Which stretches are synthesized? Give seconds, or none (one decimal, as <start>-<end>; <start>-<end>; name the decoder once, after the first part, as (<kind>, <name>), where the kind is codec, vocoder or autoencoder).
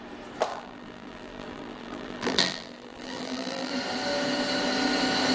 0.5-3.7 (vocoder, BigVGAN v2)